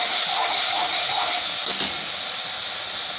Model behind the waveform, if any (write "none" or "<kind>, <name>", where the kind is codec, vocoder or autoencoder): none